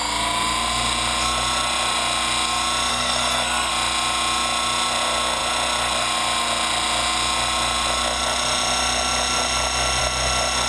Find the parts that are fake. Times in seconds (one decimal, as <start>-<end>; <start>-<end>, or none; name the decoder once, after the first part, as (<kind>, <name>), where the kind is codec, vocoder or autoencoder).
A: 2.9-3.7 (codec, SNAC)